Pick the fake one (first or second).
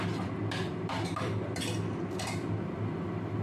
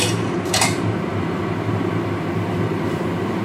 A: second